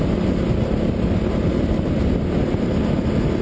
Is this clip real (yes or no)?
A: yes